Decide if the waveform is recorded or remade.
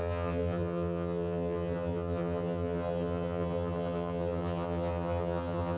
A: remade